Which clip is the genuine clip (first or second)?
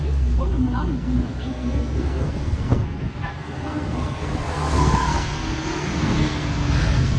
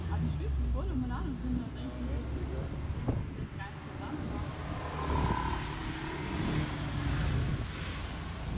second